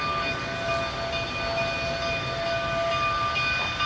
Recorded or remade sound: recorded